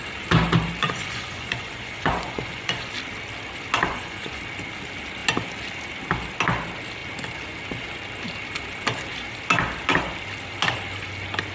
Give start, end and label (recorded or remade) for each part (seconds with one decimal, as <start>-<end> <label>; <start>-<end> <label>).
0.0-0.8 recorded; 0.8-2.9 remade; 2.9-3.9 recorded; 3.9-4.4 remade; 4.4-11.5 recorded